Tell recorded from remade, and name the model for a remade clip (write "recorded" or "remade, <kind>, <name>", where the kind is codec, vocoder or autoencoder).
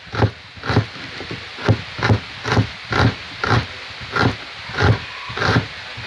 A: recorded